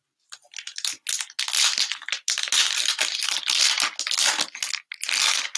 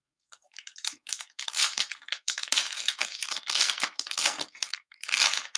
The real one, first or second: first